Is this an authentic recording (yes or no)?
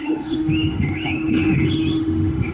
no